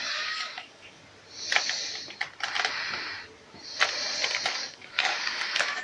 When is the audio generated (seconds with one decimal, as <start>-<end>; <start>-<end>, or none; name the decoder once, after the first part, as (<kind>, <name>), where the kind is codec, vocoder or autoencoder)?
0.0-1.0 (codec, DAC); 4.5-5.8